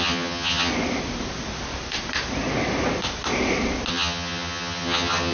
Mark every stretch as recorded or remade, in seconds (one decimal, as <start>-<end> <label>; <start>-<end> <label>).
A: 0.0-0.7 remade; 0.7-3.9 recorded; 3.9-5.3 remade